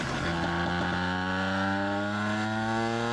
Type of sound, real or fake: real